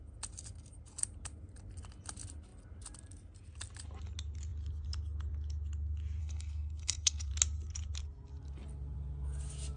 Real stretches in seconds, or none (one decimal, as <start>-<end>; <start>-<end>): 0.0-6.2; 7.3-9.8